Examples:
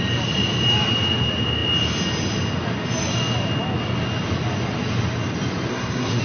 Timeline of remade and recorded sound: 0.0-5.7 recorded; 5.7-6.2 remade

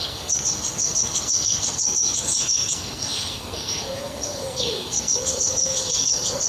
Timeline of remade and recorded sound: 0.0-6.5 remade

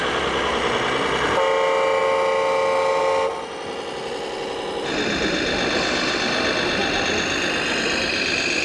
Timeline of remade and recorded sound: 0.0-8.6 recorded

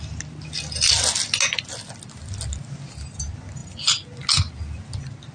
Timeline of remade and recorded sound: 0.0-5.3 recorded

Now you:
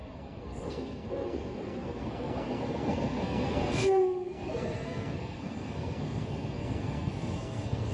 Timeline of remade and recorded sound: 0.0-7.9 remade

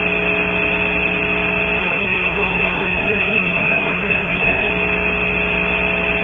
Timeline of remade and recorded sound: 0.0-1.8 recorded; 1.8-4.7 remade; 4.7-6.2 recorded